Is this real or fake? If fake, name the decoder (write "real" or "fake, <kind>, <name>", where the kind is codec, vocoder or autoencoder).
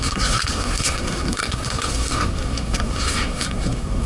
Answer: fake, codec, SNAC